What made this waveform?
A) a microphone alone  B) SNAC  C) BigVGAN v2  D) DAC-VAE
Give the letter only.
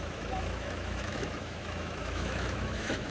D